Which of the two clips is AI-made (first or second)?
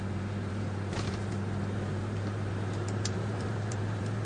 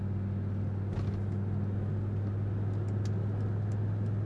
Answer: first